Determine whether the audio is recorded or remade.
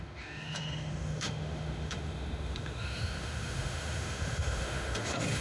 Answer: remade